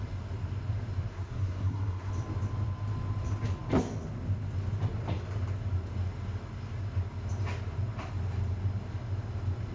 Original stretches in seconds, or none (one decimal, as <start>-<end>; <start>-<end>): 0.0-1.1; 2.1-9.7